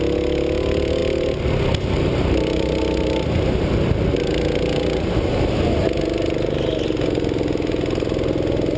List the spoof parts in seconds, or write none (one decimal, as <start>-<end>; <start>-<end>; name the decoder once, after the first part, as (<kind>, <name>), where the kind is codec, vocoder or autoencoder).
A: none